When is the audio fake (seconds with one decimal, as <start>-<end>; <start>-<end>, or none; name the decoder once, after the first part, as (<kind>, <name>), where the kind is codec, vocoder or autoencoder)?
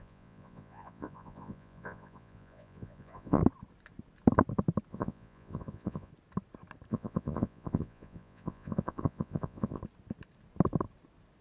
0.0-3.4 (vocoder, Vocos); 4.9-6.1; 6.9-9.8